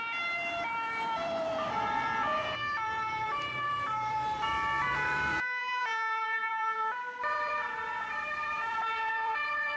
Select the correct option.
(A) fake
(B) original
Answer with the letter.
A